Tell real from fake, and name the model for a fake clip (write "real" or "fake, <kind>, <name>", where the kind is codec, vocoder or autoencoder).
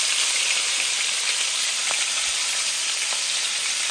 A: real